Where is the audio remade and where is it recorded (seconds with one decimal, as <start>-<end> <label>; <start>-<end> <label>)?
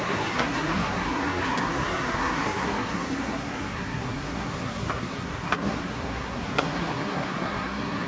0.0-8.1 remade